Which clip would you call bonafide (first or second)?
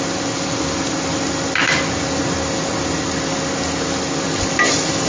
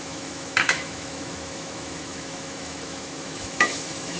first